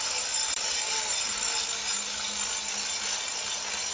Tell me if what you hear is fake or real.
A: real